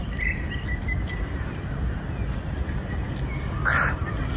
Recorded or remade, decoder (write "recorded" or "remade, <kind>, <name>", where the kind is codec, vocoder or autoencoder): recorded